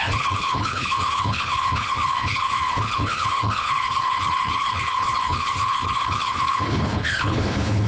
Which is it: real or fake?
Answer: fake